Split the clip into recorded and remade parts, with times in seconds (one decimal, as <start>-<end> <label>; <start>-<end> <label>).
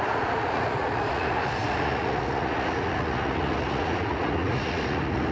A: 0.0-5.3 remade